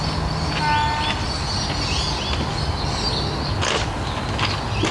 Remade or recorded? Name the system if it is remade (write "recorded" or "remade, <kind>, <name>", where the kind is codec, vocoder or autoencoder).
recorded